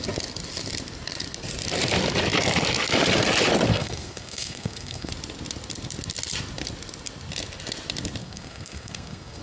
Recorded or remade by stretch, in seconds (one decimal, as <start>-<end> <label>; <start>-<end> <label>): 0.0-3.7 recorded; 3.7-5.1 remade; 5.1-8.2 recorded; 8.2-9.4 remade